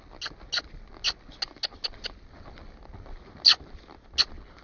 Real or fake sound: real